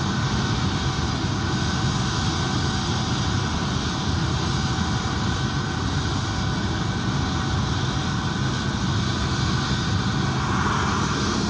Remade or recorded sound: recorded